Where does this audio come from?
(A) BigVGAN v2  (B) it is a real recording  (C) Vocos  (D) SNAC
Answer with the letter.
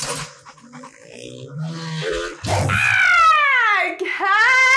B